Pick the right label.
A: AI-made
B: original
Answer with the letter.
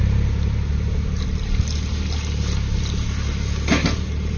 B